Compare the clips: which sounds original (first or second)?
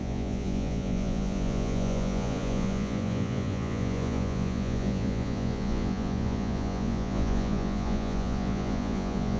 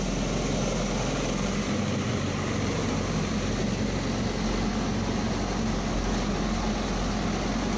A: second